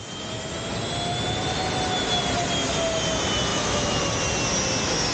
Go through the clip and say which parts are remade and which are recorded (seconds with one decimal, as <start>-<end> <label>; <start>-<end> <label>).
0.0-3.5 recorded; 3.5-4.0 remade; 4.0-5.1 recorded